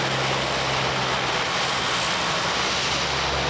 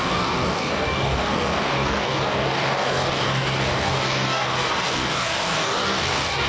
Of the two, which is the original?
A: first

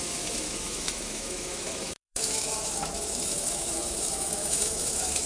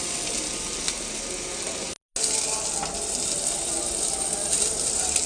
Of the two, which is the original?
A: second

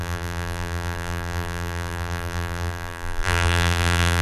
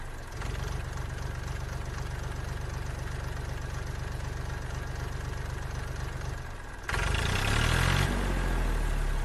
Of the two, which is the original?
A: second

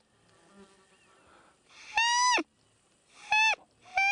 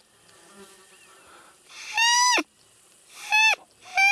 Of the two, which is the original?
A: first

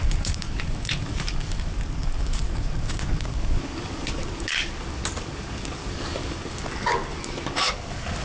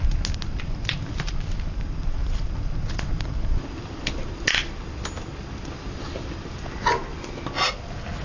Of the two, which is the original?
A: second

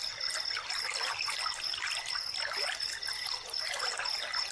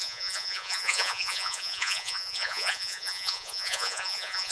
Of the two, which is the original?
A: first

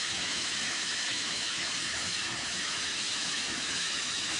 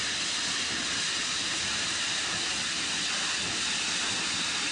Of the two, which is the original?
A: second